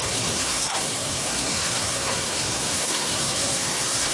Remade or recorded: remade